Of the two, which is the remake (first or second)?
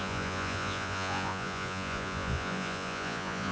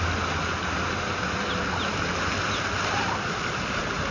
first